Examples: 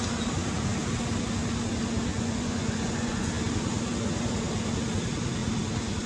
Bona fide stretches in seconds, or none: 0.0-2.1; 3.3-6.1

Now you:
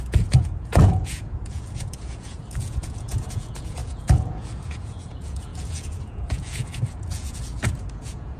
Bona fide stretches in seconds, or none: none

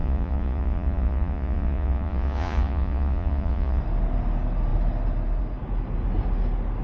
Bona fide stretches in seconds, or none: 3.8-6.8

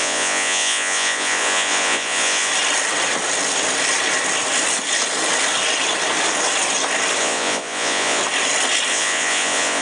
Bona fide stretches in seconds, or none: 2.5-7.2; 8.2-8.9

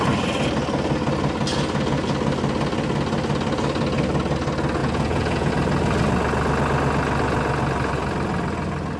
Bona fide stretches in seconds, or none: 0.0-4.8; 5.5-9.0

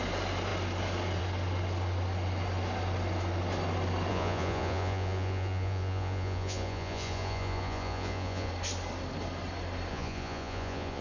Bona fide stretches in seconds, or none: 0.0-4.1; 8.5-9.9